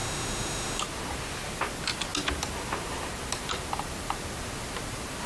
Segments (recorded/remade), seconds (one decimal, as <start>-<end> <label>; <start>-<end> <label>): 0.0-0.8 remade; 0.8-5.3 recorded